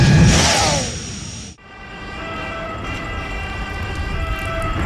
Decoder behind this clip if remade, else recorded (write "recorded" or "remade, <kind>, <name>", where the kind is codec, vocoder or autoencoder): recorded